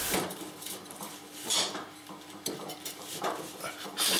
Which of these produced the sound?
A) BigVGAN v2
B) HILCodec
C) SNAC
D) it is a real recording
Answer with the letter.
A